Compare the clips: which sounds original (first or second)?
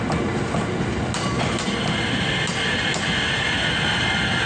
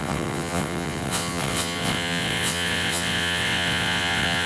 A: first